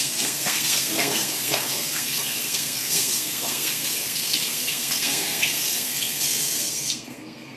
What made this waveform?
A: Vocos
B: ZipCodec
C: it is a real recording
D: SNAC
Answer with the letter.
D